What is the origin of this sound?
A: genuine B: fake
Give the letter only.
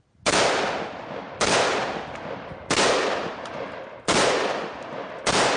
A